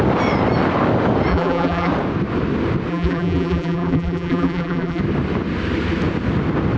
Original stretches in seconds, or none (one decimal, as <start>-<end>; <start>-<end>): 0.0-1.3; 1.9-2.9; 5.0-6.8